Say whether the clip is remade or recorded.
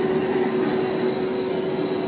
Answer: recorded